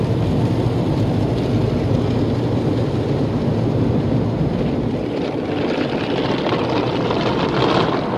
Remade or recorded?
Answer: recorded